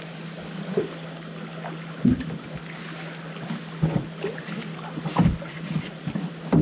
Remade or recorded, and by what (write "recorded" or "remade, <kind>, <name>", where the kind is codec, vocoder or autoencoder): recorded